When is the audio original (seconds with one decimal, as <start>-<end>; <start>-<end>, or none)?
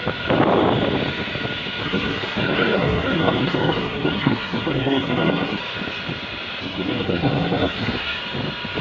0.0-1.8; 5.6-6.6; 8.2-8.8